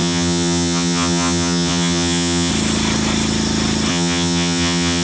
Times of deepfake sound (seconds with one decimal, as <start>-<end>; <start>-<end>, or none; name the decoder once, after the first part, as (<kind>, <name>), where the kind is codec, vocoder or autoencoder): 0.0-2.5 (vocoder, HiFi-GAN); 3.9-5.0